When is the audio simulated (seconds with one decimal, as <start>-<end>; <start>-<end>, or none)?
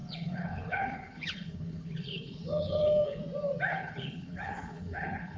0.0-3.2; 3.7-5.4